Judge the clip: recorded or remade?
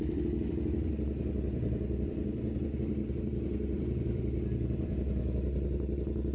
remade